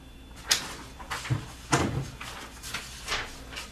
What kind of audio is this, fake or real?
real